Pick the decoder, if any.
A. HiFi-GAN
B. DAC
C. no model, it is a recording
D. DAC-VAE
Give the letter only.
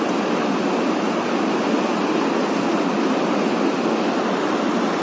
C